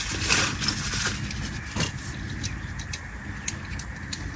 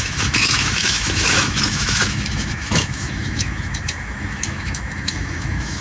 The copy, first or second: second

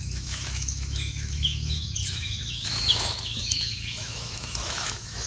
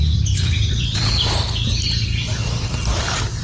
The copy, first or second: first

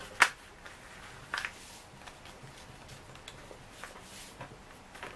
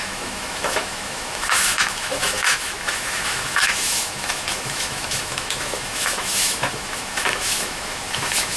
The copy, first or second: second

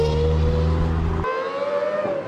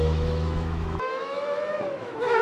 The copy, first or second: second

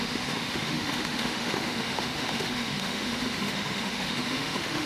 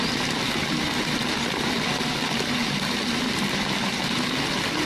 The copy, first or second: first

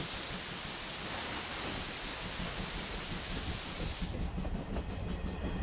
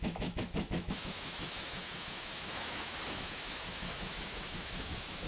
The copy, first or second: second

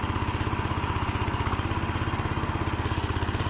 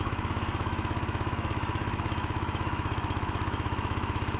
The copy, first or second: second